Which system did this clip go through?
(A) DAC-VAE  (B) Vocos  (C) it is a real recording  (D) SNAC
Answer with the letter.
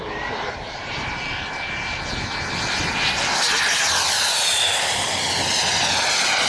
C